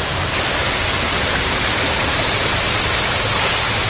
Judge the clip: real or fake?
real